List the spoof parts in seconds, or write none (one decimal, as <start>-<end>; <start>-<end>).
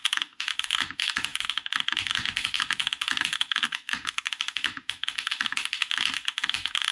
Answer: 0.0-6.9